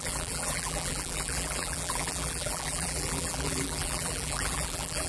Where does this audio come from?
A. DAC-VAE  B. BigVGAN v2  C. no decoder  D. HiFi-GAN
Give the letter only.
B